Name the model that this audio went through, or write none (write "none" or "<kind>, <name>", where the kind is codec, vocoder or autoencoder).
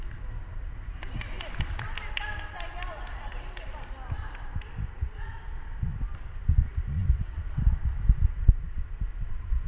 none